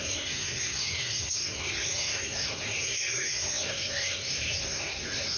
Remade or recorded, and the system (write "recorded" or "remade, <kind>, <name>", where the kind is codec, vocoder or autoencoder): remade, codec, SNAC